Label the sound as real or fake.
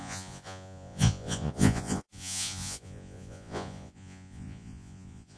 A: fake